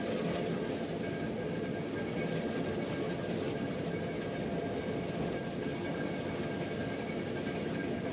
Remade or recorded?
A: recorded